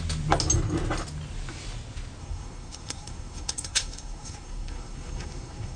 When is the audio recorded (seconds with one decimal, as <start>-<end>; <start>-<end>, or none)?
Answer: 0.0-2.2